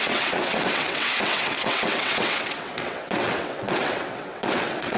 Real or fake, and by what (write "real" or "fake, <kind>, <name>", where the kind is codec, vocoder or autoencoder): fake, vocoder, WaveNeXt